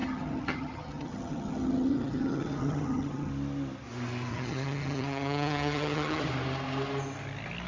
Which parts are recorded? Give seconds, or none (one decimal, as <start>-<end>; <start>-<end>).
3.3-4.3; 6.2-7.7